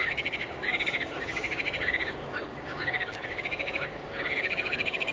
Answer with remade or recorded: remade